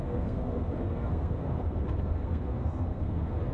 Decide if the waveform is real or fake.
fake